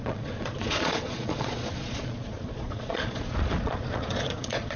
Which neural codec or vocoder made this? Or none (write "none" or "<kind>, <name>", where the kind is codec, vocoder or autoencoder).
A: vocoder, Vocos